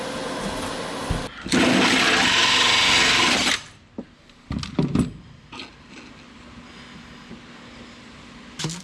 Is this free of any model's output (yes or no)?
yes